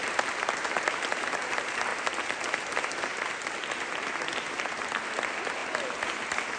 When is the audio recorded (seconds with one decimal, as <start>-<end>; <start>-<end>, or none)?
0.0-6.6